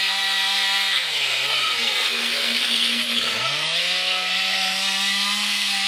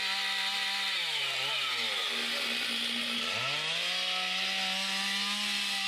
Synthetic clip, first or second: first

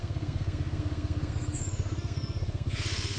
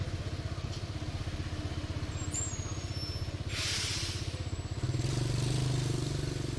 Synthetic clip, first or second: first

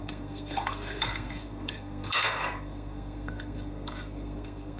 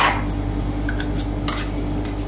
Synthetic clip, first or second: first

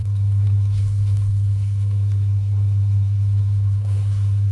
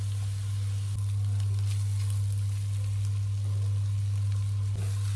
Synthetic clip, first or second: first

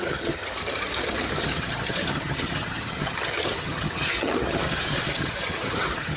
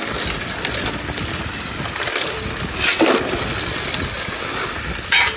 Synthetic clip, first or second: first